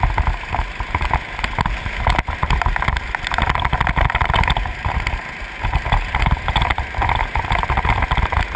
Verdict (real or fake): real